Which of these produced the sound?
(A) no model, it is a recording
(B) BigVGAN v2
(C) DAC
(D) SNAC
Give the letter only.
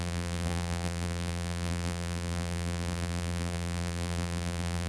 B